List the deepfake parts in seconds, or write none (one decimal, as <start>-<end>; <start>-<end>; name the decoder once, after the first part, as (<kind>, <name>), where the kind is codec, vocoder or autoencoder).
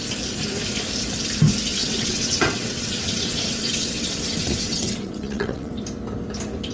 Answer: 1.7-5.7 (vocoder, WaveNeXt)